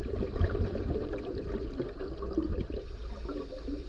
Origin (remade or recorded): remade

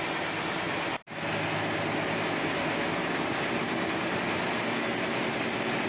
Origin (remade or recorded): recorded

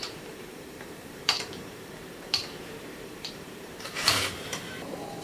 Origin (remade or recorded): remade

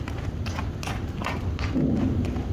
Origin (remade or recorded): recorded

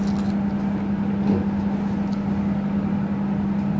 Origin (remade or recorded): recorded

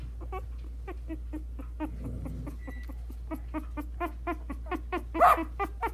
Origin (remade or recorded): recorded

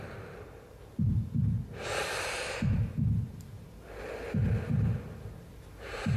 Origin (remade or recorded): recorded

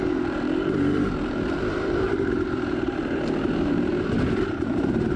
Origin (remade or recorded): remade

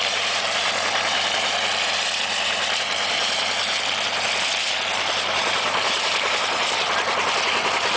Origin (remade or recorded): remade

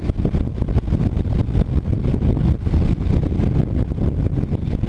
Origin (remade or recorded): recorded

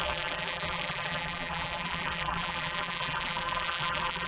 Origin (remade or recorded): remade